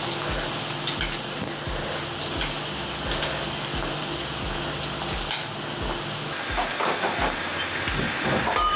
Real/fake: real